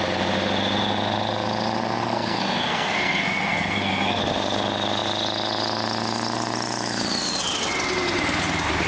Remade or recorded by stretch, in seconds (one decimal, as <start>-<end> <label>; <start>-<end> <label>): 0.0-2.0 recorded; 2.0-4.2 remade; 4.2-8.9 recorded

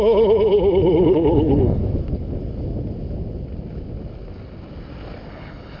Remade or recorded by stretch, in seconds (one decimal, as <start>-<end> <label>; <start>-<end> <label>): 0.0-1.8 remade; 1.8-5.3 recorded; 5.3-5.8 remade

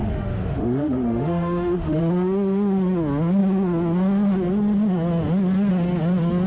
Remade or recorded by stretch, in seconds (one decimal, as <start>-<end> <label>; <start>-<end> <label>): 0.0-2.0 remade; 2.0-6.5 recorded

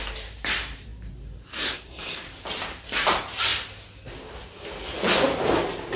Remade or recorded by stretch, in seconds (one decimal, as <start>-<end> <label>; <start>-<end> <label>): 0.0-3.5 remade; 3.5-6.0 recorded

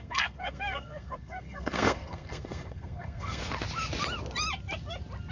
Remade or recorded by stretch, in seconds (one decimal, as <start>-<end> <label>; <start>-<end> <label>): 0.0-3.4 remade; 3.4-5.3 recorded

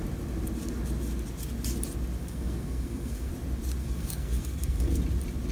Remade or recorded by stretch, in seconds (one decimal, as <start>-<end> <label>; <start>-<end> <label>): 0.0-2.2 recorded; 2.2-3.3 remade; 3.3-3.8 recorded; 3.8-5.0 remade; 5.0-5.5 recorded